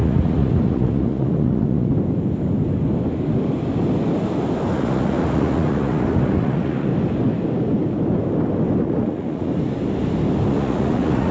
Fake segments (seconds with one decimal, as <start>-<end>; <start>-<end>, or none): 0.0-1.9; 4.7-6.9; 8.8-9.5; 10.5-11.3